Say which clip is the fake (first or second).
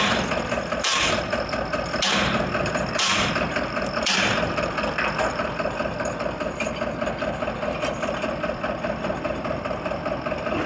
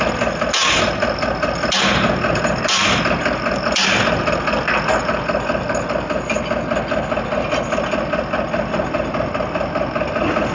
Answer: first